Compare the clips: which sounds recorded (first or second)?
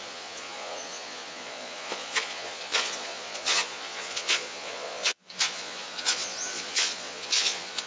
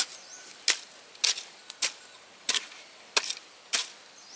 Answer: second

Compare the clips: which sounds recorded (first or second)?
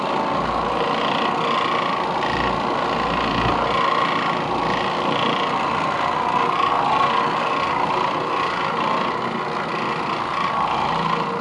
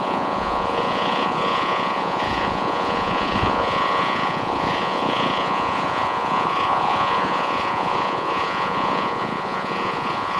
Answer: first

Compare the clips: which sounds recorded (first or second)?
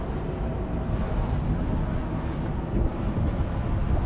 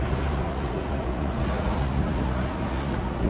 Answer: first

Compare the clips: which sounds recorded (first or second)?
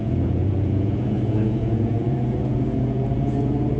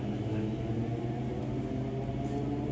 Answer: second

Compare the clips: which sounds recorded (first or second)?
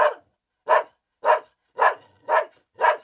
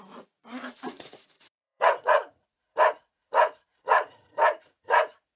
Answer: first